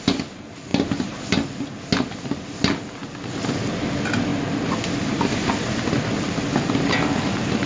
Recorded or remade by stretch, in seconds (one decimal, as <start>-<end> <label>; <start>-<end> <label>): 0.0-7.7 recorded